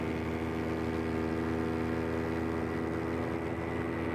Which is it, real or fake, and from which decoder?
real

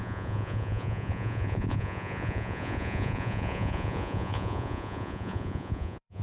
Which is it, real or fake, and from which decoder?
fake, vocoder, Vocos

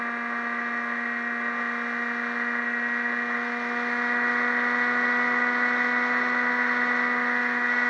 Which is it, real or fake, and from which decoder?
real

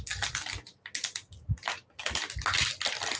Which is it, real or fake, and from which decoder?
real